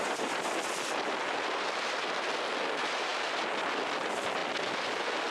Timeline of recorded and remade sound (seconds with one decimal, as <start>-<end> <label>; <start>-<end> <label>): 0.0-5.3 recorded